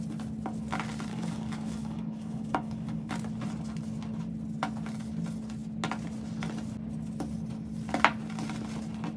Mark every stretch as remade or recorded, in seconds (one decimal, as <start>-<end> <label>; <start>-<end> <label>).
0.0-1.1 recorded; 1.1-3.1 remade; 3.1-9.2 recorded